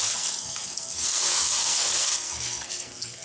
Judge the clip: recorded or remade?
remade